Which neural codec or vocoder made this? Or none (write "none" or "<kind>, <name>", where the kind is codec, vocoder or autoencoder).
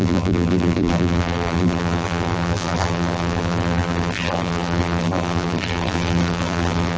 vocoder, BigVGAN v2